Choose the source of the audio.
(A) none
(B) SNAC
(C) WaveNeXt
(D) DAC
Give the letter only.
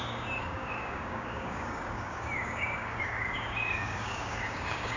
D